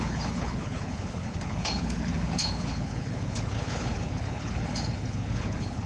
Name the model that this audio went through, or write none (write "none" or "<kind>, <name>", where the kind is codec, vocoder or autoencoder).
codec, HILCodec